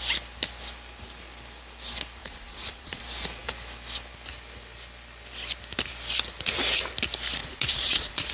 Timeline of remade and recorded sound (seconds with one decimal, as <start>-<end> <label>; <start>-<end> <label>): 0.0-2.2 recorded; 2.2-3.0 remade; 3.0-7.4 recorded; 7.4-8.3 remade